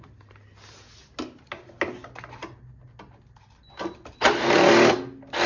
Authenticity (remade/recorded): recorded